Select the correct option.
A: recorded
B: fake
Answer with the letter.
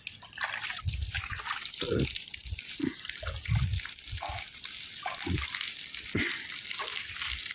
A